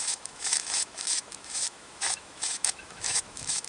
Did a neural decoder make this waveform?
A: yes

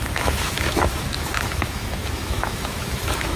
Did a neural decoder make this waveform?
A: yes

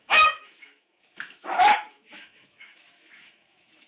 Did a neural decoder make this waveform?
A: yes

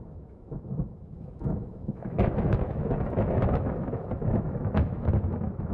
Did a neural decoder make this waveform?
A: yes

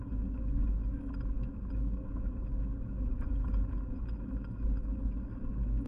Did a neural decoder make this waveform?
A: yes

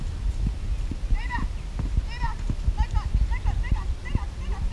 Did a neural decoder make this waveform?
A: no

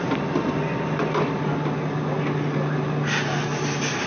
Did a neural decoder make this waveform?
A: no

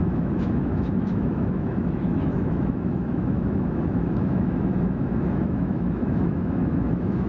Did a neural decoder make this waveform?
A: yes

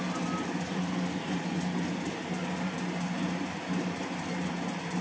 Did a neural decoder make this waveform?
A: no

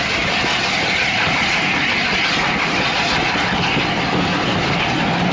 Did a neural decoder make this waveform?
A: no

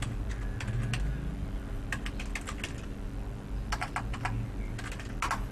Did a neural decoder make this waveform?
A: no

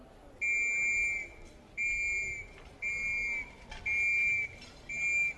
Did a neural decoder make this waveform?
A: no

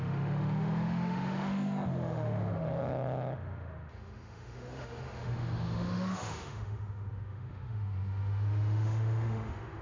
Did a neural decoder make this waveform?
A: yes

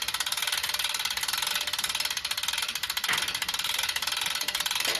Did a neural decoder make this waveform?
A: no